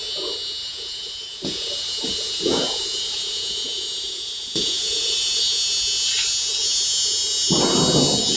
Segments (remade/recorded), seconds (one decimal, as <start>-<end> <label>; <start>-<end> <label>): 0.0-0.6 recorded; 0.6-5.4 remade; 5.4-8.4 recorded